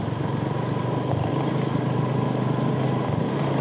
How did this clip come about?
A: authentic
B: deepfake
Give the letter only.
A